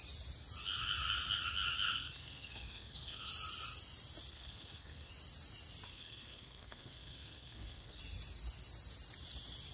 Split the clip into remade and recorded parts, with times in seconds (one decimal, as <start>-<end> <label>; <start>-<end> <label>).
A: 0.0-1.9 recorded; 1.9-3.3 remade; 3.3-4.3 recorded; 4.3-5.1 remade; 5.1-5.9 recorded; 5.9-8.0 remade; 8.0-9.7 recorded